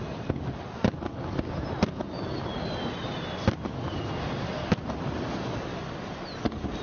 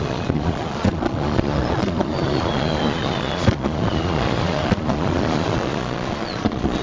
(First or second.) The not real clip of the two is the second